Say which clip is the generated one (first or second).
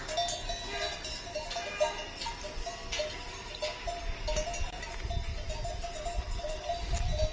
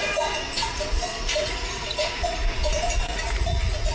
second